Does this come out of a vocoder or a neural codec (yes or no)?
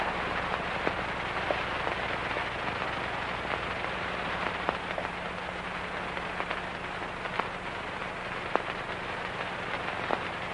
no